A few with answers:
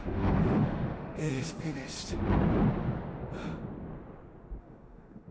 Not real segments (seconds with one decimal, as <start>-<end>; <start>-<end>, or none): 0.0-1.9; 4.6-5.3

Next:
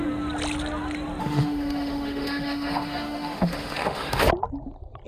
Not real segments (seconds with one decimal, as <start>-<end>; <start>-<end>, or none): 1.2-4.3

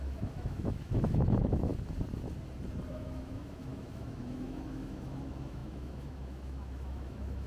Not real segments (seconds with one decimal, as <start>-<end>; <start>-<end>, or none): 0.0-1.7; 2.9-7.5

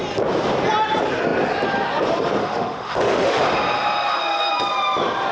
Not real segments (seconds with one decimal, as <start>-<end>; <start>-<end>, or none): 2.4-3.4